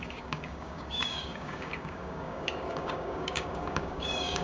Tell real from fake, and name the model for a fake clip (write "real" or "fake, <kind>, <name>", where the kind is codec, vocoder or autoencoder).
fake, codec, DAC